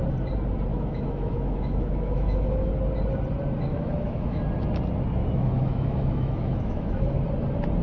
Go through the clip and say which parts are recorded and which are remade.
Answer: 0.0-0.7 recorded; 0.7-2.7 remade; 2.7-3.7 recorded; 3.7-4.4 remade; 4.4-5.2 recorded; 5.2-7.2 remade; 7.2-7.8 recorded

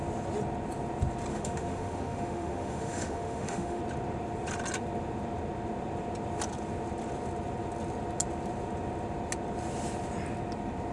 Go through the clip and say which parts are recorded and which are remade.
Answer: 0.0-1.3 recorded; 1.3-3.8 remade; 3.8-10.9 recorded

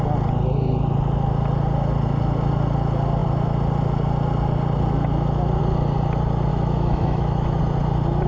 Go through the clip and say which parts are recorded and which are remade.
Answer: 0.0-6.5 recorded; 6.5-7.6 remade; 7.6-8.3 recorded